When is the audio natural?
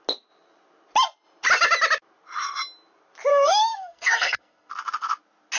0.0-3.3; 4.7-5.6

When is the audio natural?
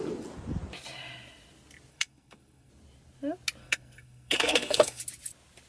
0.0-1.9; 2.7-3.6; 5.0-5.7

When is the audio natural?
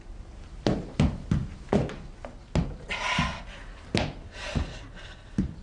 0.0-5.6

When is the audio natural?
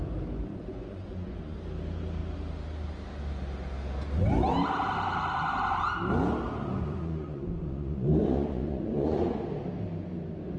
0.0-0.5; 1.6-6.6; 9.4-10.6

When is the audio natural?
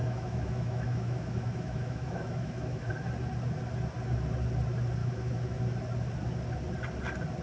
2.9-5.0; 5.6-7.4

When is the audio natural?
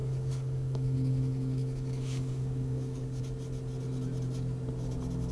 3.2-5.3